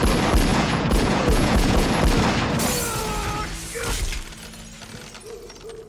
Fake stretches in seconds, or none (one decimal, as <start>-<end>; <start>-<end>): 0.5-1.9